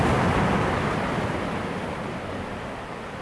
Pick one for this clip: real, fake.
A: real